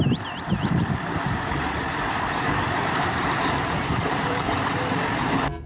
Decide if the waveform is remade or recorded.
remade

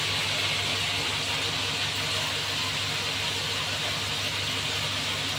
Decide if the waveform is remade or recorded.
recorded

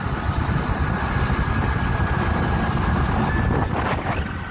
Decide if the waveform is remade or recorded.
recorded